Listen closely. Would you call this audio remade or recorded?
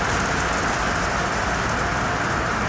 recorded